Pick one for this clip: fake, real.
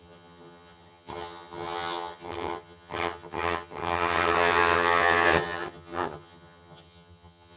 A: fake